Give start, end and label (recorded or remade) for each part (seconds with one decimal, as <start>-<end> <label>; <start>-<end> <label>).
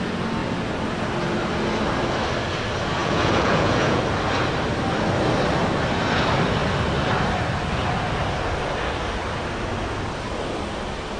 0.0-3.0 recorded; 3.0-4.0 remade; 4.0-11.2 recorded